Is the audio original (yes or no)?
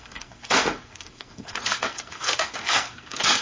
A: no